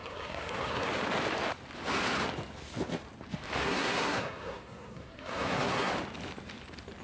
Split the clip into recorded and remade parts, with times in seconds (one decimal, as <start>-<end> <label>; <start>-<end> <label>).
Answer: 0.0-0.9 remade; 0.9-3.6 recorded; 3.6-5.9 remade; 5.9-7.0 recorded